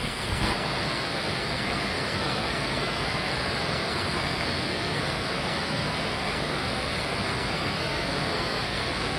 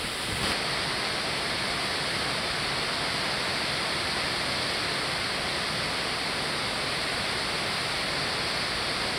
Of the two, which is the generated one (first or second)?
first